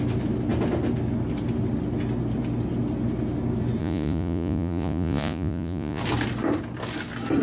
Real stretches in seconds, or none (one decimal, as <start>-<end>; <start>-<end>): 0.0-3.8; 6.0-7.4